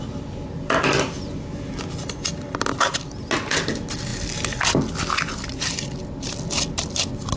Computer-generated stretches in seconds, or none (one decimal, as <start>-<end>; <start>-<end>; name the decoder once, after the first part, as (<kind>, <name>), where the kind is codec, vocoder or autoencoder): none